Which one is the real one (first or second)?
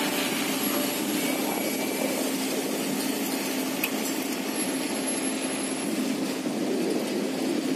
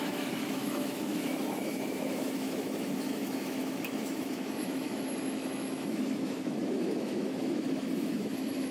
first